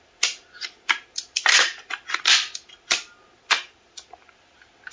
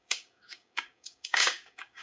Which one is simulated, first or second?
second